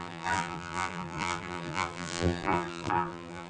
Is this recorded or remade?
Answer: remade